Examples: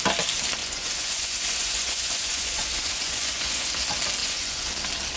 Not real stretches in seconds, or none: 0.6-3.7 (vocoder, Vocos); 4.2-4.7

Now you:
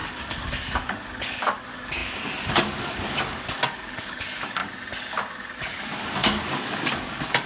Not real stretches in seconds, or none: 0.0-4.6 (codec, DAC); 5.6-7.5

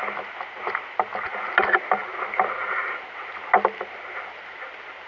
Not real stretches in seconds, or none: none